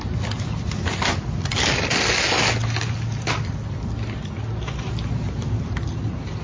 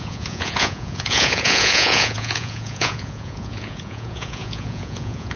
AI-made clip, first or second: second